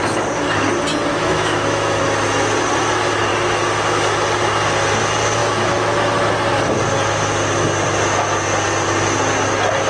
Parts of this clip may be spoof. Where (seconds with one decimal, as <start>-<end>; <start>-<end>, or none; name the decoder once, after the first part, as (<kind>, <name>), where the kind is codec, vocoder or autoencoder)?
1.1-2.0 (autoencoder, DAC-VAE); 5.4-6.3

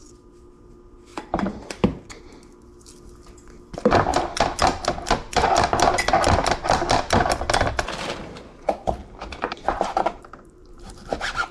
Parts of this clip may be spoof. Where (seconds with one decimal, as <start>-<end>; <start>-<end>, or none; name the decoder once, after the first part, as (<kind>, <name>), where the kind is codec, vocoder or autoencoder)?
1.1-2.2 (vocoder, BigVGAN v2); 9.0-11.0

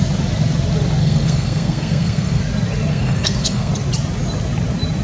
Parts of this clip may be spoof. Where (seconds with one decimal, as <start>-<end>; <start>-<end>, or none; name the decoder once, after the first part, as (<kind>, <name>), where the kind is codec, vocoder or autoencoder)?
1.0-2.4 (codec, SNAC); 2.9-3.7